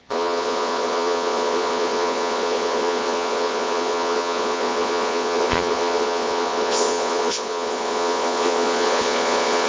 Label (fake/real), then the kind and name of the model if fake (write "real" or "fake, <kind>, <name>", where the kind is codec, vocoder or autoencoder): fake, vocoder, Vocos